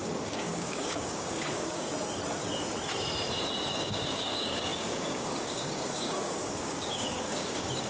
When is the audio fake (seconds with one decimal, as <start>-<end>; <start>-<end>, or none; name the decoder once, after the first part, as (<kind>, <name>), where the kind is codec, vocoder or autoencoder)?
0.0-1.9 (codec, DAC); 3.7-7.9